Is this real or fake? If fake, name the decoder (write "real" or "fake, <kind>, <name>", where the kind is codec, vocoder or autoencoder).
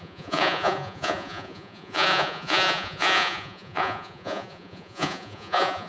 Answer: fake, vocoder, Vocos